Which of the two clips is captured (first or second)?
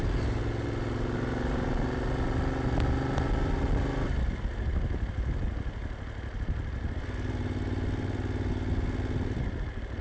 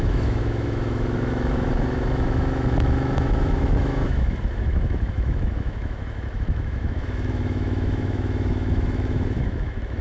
first